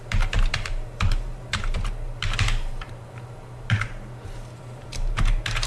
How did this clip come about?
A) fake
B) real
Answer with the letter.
A